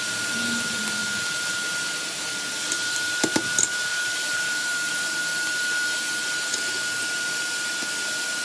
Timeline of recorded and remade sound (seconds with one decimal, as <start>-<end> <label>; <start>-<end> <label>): 0.0-3.9 recorded; 3.9-5.2 remade; 5.2-8.4 recorded